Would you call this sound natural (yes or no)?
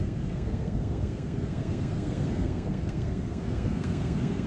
no